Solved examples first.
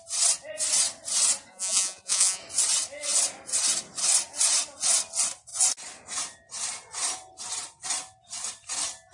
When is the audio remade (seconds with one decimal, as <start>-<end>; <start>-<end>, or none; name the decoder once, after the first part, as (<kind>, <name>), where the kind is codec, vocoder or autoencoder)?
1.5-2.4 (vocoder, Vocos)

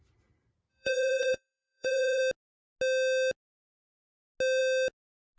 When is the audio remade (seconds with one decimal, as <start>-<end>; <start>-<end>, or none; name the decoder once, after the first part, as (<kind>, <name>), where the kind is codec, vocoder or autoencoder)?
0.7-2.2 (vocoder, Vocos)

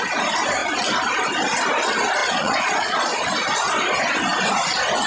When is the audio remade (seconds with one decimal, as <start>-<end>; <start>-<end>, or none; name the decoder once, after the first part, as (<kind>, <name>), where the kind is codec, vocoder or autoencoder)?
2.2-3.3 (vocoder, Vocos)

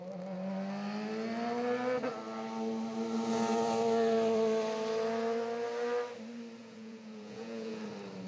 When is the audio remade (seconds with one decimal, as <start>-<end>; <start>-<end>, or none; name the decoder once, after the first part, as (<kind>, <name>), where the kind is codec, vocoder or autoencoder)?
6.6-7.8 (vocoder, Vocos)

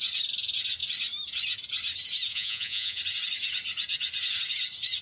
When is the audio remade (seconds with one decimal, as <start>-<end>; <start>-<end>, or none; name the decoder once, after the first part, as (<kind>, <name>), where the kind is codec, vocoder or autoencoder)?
2.3-3.0 (vocoder, Vocos)